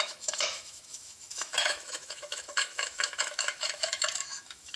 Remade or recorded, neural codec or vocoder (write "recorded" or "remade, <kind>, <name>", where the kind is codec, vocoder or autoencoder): remade, autoencoder, DAC-VAE